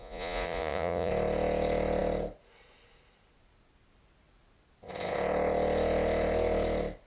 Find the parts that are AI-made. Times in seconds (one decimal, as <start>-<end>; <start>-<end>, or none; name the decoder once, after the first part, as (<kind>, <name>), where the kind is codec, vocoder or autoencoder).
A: 0.0-1.1 (vocoder, Vocos)